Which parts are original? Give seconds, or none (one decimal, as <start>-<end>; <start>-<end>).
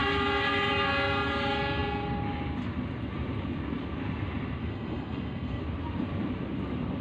0.0-4.6; 5.6-7.0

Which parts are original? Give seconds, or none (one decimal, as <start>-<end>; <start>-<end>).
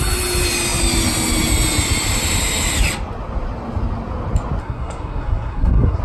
0.0-4.6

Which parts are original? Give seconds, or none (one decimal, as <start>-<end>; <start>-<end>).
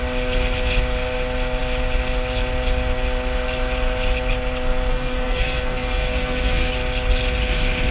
0.0-4.9; 6.7-7.9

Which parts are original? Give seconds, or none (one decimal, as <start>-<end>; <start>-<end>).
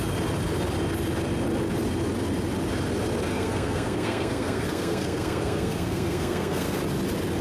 0.0-3.3; 6.8-7.4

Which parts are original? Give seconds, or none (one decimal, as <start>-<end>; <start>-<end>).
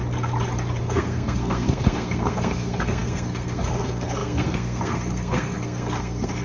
0.0-0.8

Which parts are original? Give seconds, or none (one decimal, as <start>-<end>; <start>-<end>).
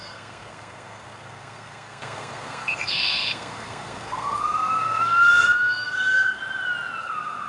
6.4-7.0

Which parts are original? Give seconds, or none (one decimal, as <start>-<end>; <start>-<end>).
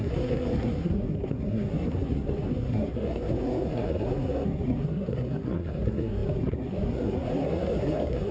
none